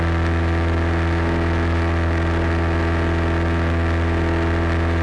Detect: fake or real real